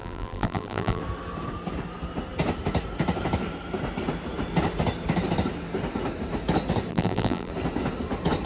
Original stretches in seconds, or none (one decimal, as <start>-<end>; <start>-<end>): 1.0-6.9; 7.5-8.5